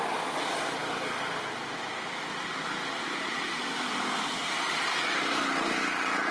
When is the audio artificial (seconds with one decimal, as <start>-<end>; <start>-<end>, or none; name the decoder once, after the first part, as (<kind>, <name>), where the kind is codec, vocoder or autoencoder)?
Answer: none